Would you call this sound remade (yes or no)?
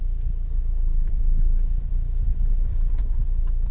yes